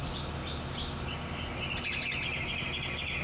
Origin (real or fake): real